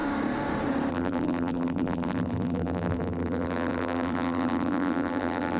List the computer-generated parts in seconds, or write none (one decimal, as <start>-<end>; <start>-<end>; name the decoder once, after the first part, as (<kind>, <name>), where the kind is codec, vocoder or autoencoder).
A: 0.9-5.6 (vocoder, BigVGAN v2)